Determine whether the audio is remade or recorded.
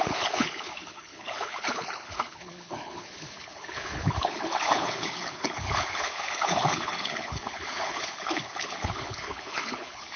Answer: remade